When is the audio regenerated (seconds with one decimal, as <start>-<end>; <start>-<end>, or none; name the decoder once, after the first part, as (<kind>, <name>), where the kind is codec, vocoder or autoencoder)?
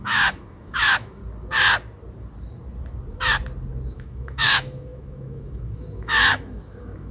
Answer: 0.0-1.2 (autoencoder, DAC-VAE); 3.9-7.1